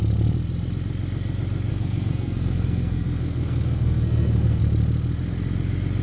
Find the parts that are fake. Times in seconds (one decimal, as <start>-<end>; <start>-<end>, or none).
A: 1.7-4.6